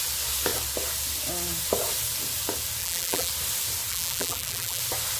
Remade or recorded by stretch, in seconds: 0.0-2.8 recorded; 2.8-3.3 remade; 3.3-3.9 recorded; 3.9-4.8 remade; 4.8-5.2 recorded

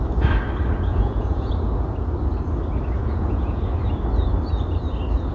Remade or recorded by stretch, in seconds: 0.0-0.9 recorded; 0.9-1.5 remade; 1.5-3.0 recorded; 3.0-3.8 remade; 3.8-5.3 recorded